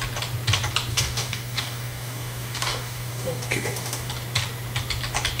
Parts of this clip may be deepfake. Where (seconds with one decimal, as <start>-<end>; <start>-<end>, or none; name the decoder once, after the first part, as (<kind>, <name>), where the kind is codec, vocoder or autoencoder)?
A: 0.9-4.1 (codec, DAC)